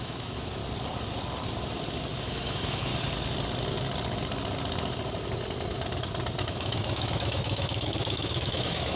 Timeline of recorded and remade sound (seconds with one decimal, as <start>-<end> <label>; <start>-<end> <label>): 0.0-0.6 remade; 0.6-2.2 recorded; 2.2-2.9 remade; 2.9-6.4 recorded; 6.4-9.0 remade